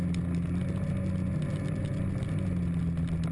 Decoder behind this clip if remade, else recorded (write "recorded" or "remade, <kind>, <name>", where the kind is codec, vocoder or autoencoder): recorded